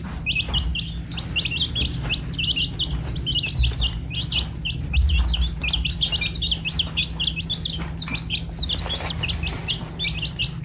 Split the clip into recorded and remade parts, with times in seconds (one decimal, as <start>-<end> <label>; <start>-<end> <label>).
0.0-10.6 recorded